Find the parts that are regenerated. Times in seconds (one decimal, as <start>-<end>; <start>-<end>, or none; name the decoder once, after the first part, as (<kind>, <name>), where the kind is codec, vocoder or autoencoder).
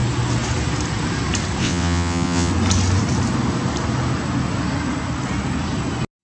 1.6-2.5 (vocoder, WaveNeXt)